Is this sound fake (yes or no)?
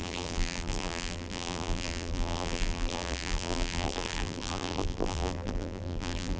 yes